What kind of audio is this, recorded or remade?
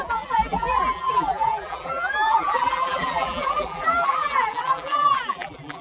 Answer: remade